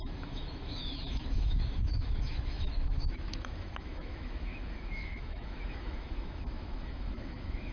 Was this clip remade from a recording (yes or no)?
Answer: yes